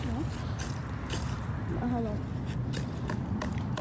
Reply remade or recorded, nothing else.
recorded